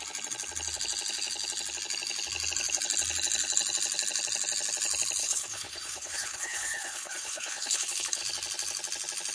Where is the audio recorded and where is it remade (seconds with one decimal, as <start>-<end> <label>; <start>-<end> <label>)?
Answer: 0.0-5.2 recorded; 5.2-8.2 remade; 8.2-9.3 recorded